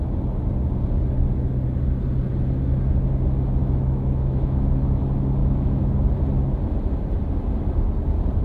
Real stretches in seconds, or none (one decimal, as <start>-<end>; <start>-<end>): 0.0-3.6; 5.0-5.4; 5.9-8.4